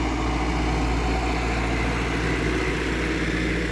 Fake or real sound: real